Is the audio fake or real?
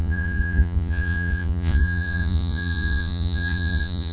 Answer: fake